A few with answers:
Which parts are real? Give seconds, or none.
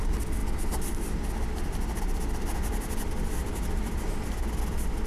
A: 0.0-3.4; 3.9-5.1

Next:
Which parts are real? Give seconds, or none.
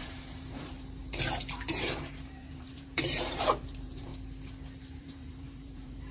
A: 4.1-5.0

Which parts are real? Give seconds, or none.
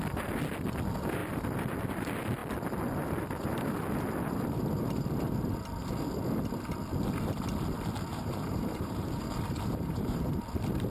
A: 0.0-8.1; 10.4-10.9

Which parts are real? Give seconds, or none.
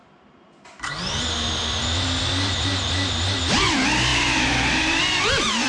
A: 0.0-4.1; 5.0-5.7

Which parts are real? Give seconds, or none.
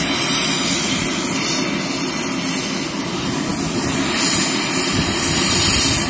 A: 0.0-6.1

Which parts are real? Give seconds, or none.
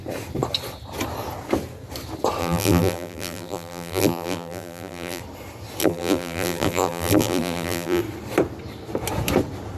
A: 0.0-2.4; 5.2-5.8; 8.0-9.8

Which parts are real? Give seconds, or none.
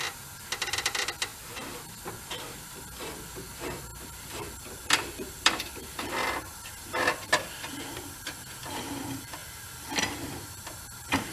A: none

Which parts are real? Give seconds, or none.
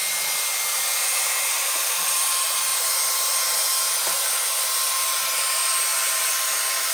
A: 0.0-0.7; 2.7-6.9